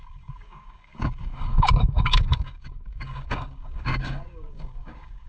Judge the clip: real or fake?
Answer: fake